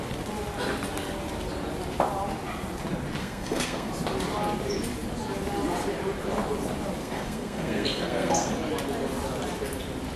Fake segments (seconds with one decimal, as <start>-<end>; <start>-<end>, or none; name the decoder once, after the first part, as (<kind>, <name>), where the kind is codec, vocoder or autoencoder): 3.2-3.9 (codec, SNAC); 7.0-8.5